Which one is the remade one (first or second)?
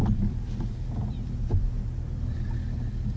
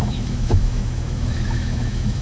second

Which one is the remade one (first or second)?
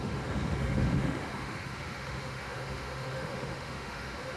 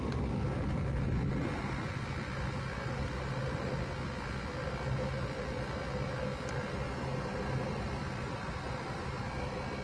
first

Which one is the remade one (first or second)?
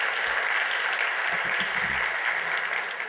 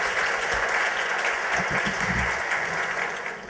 second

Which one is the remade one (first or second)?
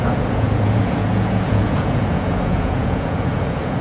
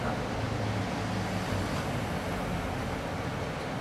first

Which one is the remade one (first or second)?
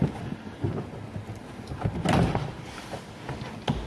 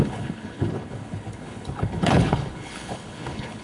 second